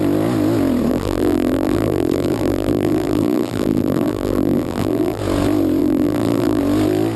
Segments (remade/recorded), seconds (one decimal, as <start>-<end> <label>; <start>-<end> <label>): 0.0-0.9 recorded; 0.9-5.2 remade; 5.2-5.8 recorded; 5.8-6.6 remade; 6.6-7.2 recorded